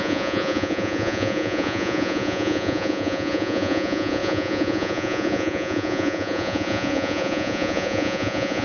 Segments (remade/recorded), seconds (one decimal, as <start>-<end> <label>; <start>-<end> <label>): 0.0-8.6 remade